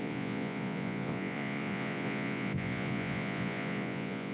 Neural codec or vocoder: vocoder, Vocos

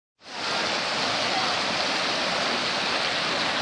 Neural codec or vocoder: none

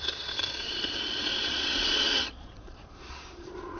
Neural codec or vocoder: vocoder, Vocos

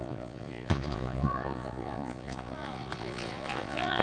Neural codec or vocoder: vocoder, Vocos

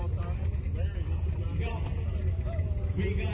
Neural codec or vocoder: none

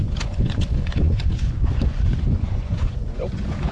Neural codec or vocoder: vocoder, Vocos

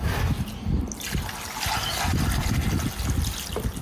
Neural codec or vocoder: none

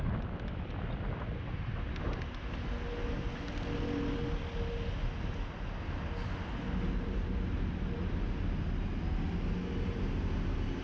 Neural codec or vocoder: none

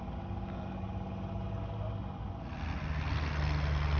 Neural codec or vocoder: none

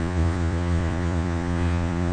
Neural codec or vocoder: vocoder, Vocos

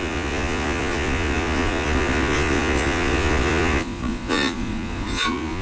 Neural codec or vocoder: vocoder, Vocos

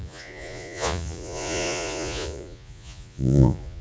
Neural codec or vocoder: vocoder, Vocos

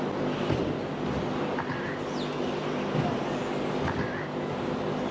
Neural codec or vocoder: none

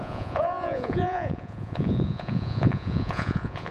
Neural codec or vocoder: vocoder, Vocos